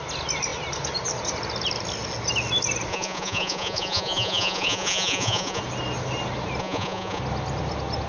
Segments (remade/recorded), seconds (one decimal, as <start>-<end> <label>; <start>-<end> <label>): 0.0-2.9 recorded; 2.9-5.6 remade; 5.6-6.6 recorded; 6.6-7.2 remade; 7.2-8.1 recorded